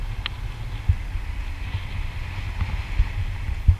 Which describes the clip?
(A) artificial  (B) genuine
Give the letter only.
B